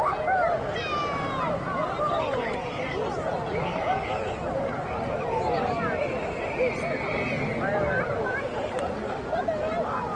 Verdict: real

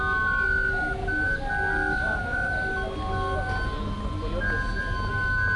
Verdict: real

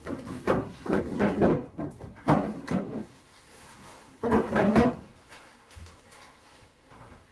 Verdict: fake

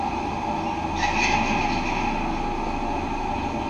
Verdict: real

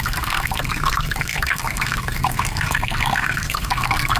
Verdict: fake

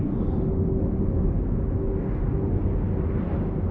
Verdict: real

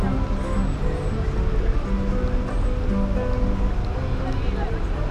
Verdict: real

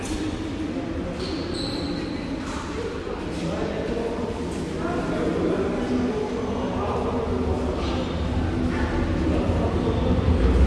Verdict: real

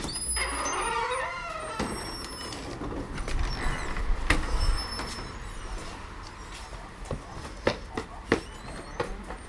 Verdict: real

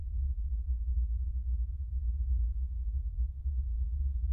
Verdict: fake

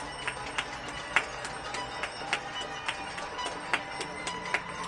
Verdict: real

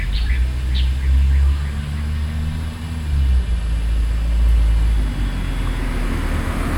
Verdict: real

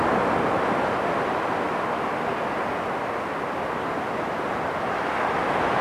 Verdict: real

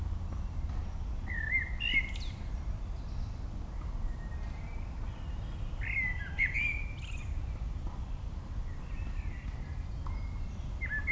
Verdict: real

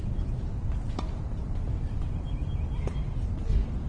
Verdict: real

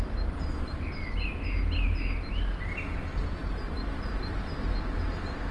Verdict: real